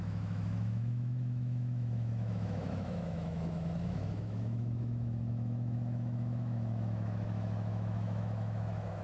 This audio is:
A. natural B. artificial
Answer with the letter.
B